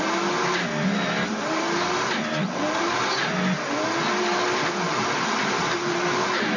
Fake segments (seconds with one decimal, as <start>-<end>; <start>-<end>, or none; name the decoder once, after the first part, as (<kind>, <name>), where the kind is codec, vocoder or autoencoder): none